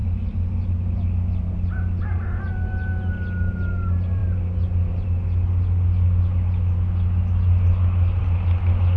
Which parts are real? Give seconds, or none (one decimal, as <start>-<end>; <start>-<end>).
0.0-9.0